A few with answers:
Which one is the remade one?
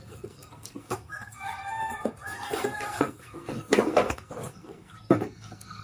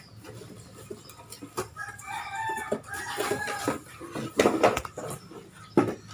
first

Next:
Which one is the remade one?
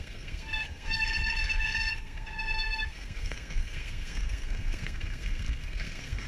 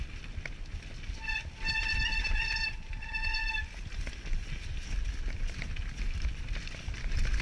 first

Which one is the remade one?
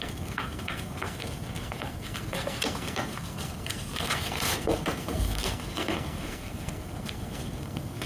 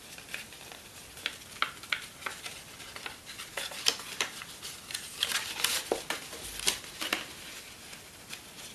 first